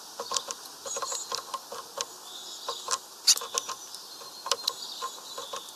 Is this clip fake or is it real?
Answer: real